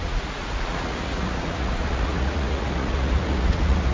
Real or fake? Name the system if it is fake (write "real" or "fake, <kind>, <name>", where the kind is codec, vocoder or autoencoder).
fake, vocoder, Vocos